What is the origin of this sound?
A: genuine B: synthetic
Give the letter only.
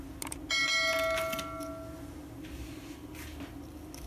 A